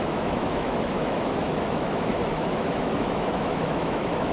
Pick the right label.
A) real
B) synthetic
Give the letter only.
B